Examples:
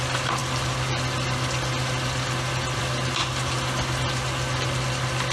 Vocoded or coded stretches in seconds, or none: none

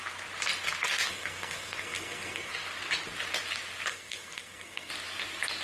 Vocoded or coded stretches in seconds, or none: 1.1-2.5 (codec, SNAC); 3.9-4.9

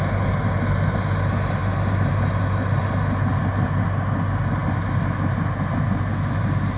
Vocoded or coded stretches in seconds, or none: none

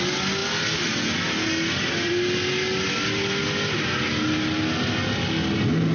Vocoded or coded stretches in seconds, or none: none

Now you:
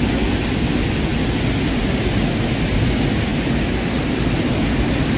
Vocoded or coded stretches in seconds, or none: none